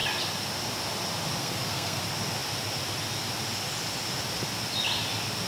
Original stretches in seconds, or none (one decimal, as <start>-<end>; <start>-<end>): 0.0-1.4; 2.0-5.5